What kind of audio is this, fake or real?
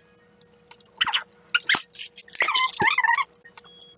real